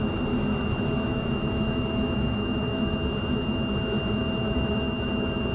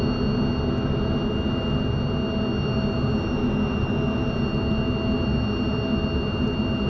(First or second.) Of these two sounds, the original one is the second